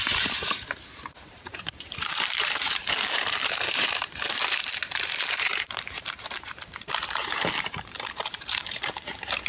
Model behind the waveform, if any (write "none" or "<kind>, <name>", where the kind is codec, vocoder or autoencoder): vocoder, BigVGAN v2